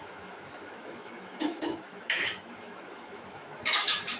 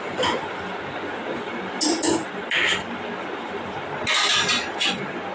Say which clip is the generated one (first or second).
first